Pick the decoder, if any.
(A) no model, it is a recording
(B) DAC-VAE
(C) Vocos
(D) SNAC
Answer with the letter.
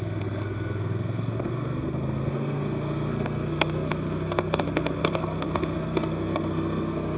D